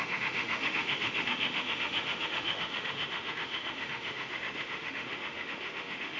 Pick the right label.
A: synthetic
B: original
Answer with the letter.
A